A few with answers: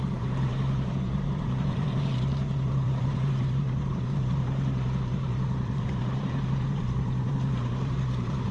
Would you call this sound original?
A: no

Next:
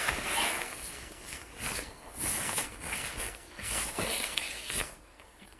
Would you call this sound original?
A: no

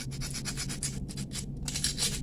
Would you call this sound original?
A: yes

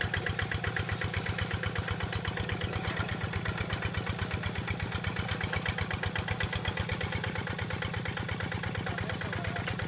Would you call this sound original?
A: yes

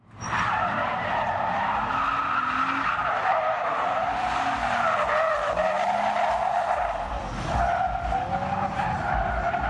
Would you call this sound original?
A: yes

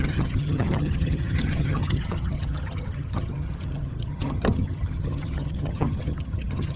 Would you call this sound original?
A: no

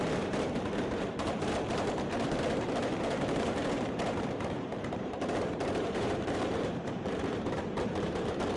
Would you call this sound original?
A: no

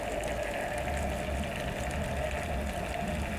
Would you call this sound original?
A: yes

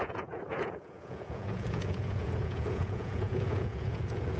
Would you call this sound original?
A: no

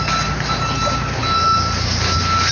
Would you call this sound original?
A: yes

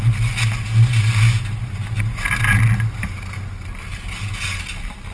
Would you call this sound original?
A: yes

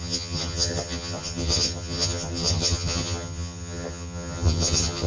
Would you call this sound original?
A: no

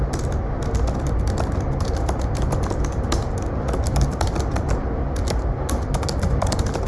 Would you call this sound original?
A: yes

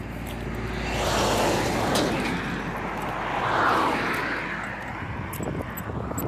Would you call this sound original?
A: yes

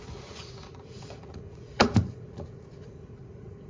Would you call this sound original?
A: no